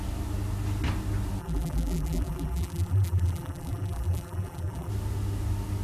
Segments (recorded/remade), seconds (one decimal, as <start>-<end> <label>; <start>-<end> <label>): 0.0-1.4 recorded; 1.4-4.9 remade; 4.9-5.8 recorded